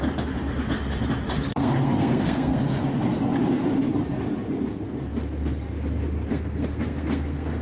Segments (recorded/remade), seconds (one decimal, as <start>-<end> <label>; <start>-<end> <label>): 0.0-1.5 recorded; 1.5-2.6 remade; 2.6-6.3 recorded; 6.3-7.6 remade

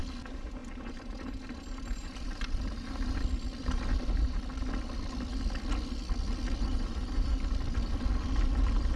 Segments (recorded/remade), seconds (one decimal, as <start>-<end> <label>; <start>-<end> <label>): 0.0-0.6 recorded; 0.6-3.2 remade; 3.2-3.6 recorded; 3.6-4.4 remade; 4.4-6.7 recorded; 6.7-7.3 remade; 7.3-9.0 recorded

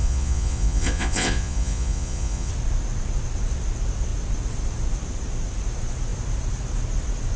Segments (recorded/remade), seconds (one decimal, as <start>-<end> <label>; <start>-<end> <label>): 0.0-2.5 remade; 2.5-7.4 recorded